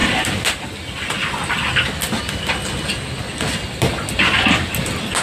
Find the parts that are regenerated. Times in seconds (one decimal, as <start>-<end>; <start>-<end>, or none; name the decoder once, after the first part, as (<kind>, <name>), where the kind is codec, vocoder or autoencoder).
none

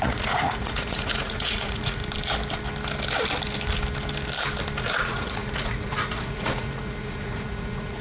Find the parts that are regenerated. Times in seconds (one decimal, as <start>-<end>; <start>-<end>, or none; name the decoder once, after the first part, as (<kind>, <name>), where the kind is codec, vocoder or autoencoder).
0.0-2.0 (vocoder, Vocos); 4.8-8.0